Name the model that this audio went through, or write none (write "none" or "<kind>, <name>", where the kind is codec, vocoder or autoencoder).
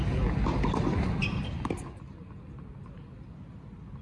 none